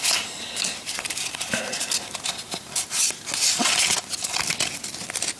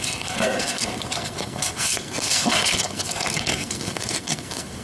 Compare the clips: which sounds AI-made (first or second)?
second